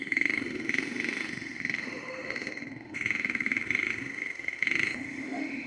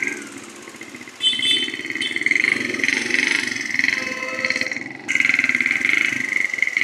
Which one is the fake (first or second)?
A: first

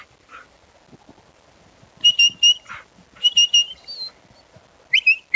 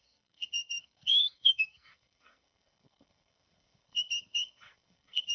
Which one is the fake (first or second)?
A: second